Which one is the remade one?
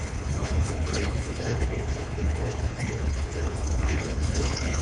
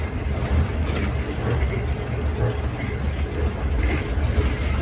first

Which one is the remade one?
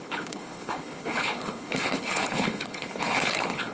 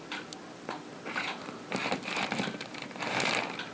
first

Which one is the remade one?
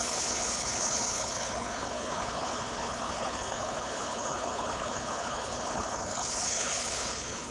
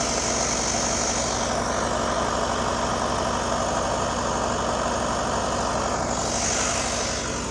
first